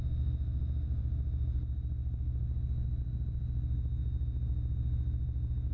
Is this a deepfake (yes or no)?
no